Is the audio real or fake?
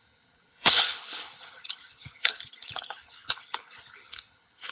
fake